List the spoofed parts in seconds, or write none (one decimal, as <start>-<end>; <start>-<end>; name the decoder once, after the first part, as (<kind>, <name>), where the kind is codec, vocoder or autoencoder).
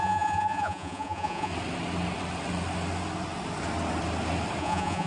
0.0-1.5 (vocoder, Vocos); 4.6-5.1